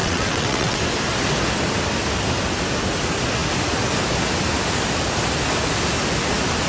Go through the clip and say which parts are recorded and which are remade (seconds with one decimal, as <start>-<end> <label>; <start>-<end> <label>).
0.0-0.8 remade; 0.8-6.7 recorded